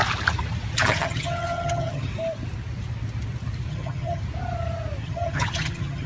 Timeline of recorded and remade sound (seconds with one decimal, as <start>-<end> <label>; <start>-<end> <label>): 0.0-0.8 recorded; 0.8-2.1 remade; 2.1-3.7 recorded; 3.7-4.2 remade; 4.2-5.0 recorded; 5.0-6.1 remade